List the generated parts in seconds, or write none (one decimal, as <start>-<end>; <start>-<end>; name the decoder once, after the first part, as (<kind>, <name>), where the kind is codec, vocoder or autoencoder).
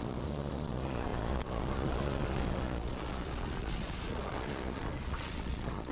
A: 0.0-5.9 (vocoder, Vocos)